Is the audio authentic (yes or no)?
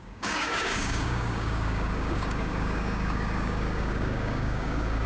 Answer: no